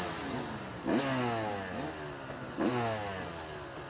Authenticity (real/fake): real